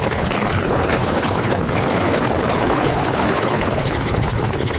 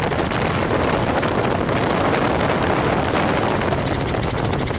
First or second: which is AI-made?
first